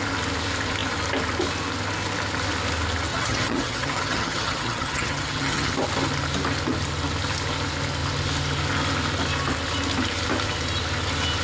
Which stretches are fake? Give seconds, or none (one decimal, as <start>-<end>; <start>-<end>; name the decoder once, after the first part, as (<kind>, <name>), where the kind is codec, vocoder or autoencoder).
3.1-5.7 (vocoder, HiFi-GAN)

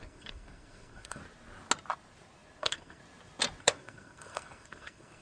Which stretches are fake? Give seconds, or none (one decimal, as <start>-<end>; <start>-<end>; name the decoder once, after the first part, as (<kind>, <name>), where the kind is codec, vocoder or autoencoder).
0.0-1.2 (codec, SNAC); 2.6-3.0; 3.6-5.2

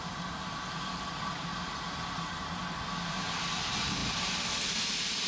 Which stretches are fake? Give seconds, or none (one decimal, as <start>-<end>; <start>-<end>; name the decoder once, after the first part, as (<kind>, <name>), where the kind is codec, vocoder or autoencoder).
none

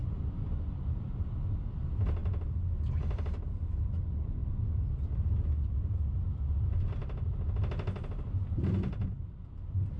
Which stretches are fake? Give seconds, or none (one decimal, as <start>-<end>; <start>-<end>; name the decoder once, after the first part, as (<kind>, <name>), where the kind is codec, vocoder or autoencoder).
none